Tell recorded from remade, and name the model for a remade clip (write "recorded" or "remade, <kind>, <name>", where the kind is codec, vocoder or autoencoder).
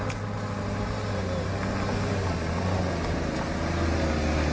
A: recorded